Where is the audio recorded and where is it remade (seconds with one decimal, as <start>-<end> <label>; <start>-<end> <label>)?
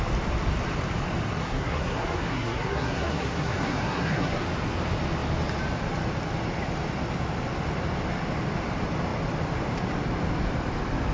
0.0-1.4 recorded; 1.4-4.4 remade; 4.4-11.1 recorded